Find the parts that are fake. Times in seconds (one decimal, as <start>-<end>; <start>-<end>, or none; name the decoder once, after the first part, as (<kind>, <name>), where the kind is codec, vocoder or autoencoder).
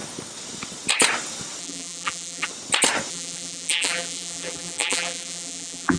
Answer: 1.6-2.5 (vocoder, BigVGAN v2); 3.1-6.0